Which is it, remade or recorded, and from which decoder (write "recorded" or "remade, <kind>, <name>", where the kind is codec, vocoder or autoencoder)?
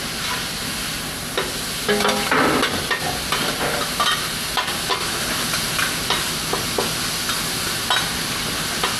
recorded